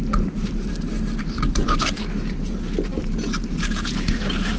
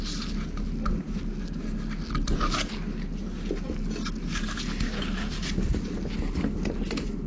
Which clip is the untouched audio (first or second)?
second